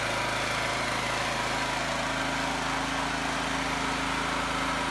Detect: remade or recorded recorded